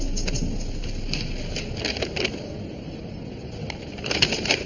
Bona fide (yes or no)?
yes